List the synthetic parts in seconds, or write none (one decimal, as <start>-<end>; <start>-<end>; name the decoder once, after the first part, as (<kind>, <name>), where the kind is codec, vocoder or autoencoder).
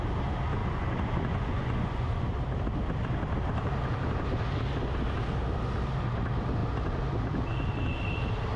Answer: 0.6-2.3 (vocoder, Vocos)